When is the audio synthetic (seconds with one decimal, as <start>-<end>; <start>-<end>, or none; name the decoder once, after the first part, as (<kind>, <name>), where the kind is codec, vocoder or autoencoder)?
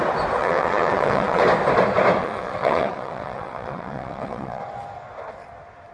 0.4-1.4 (vocoder, WaveNeXt); 2.2-4.6